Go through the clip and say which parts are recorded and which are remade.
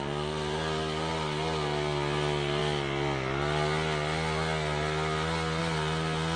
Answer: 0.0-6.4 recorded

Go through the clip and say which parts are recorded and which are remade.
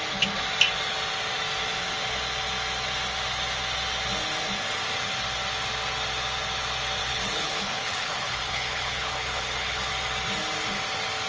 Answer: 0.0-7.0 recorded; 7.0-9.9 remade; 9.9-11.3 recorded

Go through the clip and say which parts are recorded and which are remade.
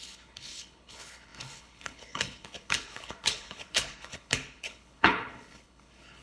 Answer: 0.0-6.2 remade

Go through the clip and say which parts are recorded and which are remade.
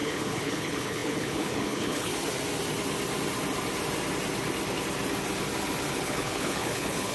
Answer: 0.0-2.1 remade; 2.1-5.9 recorded; 5.9-7.1 remade